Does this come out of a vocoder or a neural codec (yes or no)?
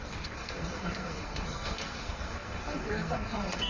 yes